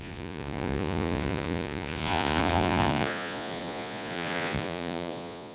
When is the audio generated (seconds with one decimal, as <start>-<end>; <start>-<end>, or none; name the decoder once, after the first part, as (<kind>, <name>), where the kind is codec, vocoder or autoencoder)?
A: 0.0-5.5 (vocoder, Vocos)